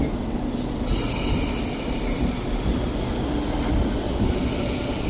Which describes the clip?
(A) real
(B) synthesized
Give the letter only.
A